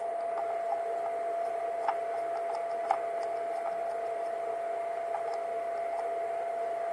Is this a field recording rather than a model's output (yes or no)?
yes